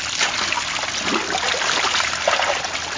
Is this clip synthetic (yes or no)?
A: no